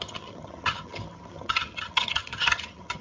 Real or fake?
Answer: fake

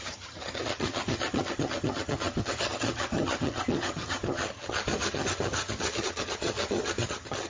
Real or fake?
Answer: fake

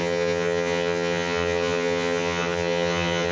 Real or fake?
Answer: fake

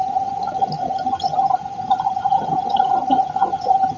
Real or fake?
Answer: fake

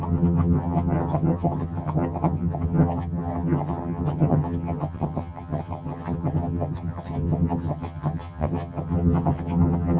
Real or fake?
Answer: fake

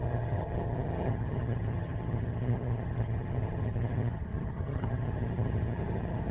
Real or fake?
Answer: fake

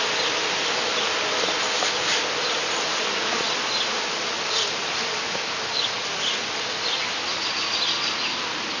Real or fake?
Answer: real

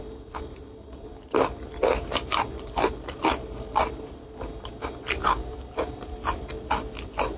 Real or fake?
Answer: real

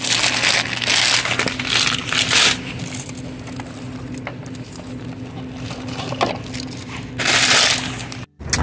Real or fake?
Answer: real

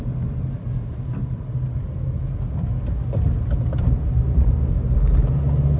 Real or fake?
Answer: real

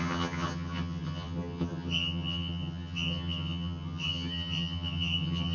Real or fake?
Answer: fake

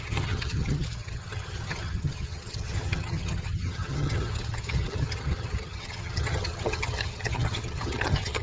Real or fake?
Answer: fake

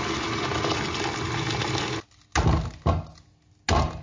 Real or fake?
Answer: real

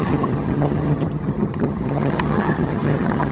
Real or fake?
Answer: fake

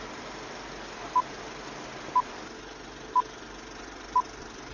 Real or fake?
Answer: real